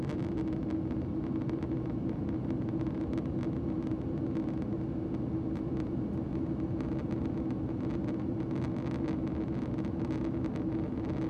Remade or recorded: recorded